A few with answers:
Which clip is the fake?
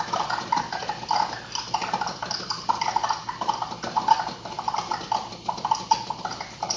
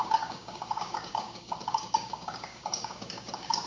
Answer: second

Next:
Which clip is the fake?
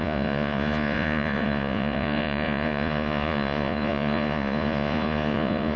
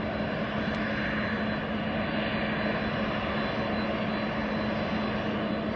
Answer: first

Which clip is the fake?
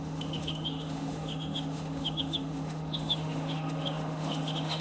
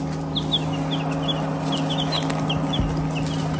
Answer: first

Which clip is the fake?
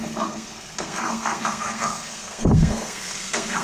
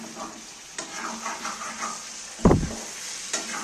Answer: first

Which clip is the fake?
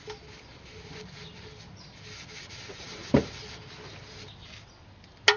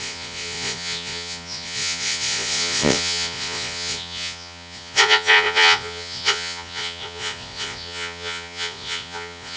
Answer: second